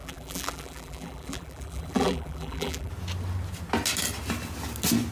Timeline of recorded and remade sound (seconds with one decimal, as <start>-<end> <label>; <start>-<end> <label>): 0.0-2.9 remade; 2.9-5.1 recorded